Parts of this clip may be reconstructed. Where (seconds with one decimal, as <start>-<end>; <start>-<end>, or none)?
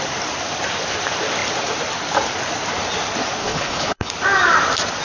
3.4-4.1